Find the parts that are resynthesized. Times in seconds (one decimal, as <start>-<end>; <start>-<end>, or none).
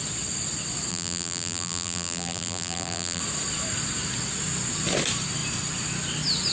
0.9-3.2